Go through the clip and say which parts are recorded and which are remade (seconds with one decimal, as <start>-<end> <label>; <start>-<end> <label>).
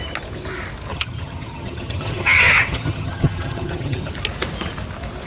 0.0-0.9 recorded; 0.9-4.1 remade; 4.1-5.3 recorded